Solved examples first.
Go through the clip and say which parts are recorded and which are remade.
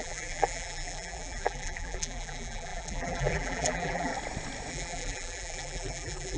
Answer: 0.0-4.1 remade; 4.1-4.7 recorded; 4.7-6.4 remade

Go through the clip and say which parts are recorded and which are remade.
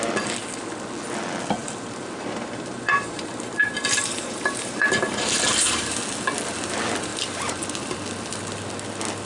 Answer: 0.0-1.6 recorded; 1.6-6.0 remade; 6.0-7.1 recorded; 7.1-7.6 remade; 7.6-9.3 recorded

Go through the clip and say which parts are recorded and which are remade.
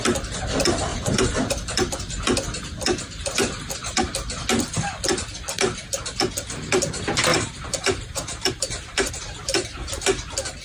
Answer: 0.0-0.9 recorded; 0.9-1.9 remade; 1.9-7.3 recorded; 7.3-9.1 remade; 9.1-10.6 recorded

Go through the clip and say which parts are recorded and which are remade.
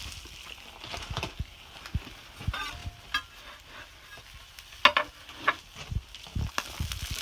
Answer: 0.0-7.2 recorded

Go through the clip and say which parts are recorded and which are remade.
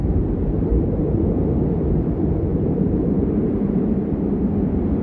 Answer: 0.0-1.0 remade; 1.0-2.5 recorded; 2.5-4.2 remade; 4.2-5.0 recorded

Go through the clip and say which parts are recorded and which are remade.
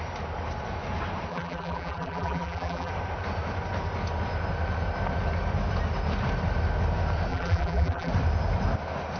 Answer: 0.0-1.3 recorded; 1.3-2.9 remade; 2.9-7.3 recorded; 7.3-8.1 remade; 8.1-9.2 recorded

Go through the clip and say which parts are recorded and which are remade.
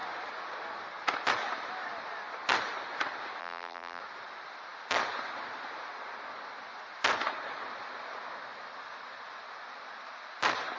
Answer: 0.0-3.4 recorded; 3.4-4.0 remade; 4.0-10.8 recorded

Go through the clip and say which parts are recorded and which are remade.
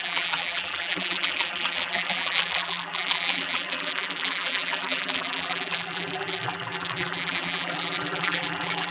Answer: 0.0-8.9 remade